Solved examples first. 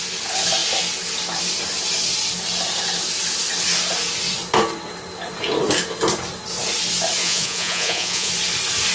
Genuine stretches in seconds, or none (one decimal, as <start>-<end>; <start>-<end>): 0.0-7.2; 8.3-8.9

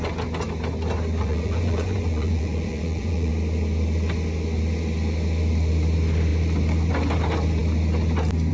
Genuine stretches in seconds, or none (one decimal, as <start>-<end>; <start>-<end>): 0.0-1.2; 3.3-8.5

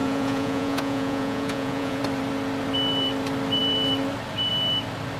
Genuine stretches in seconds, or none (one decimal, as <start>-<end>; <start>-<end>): 2.0-5.2

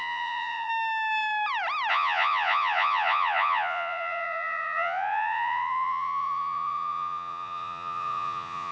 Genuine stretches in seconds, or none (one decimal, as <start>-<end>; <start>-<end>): 0.7-1.9

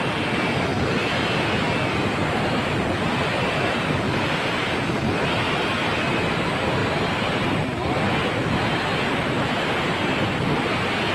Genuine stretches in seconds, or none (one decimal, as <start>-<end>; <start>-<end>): 0.0-11.1

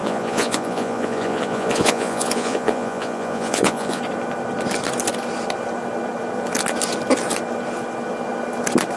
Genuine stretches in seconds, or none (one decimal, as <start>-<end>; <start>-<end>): 4.0-9.0

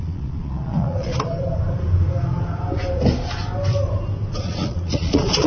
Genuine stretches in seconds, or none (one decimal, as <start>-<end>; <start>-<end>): 1.1-4.4

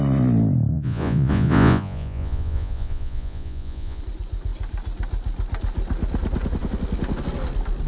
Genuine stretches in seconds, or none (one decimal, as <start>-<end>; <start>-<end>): 0.0-0.7; 4.0-7.9